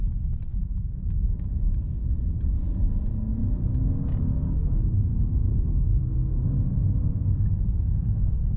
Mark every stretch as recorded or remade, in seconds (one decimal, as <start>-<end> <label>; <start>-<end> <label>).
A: 0.0-0.5 recorded; 0.5-1.7 remade; 1.7-3.3 recorded; 3.3-3.9 remade; 3.9-5.4 recorded; 5.4-8.2 remade; 8.2-8.6 recorded